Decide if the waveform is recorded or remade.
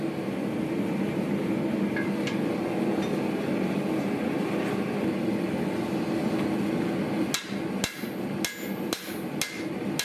recorded